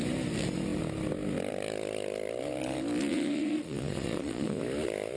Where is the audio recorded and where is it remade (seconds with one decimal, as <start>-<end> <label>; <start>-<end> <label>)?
0.0-3.1 recorded; 3.1-4.6 remade; 4.6-5.2 recorded